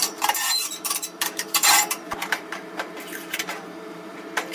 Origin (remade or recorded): remade